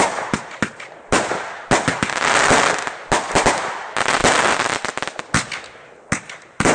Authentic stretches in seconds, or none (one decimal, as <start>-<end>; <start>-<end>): 0.0-6.7